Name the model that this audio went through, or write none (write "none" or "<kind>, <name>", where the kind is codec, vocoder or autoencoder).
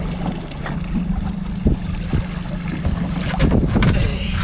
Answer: none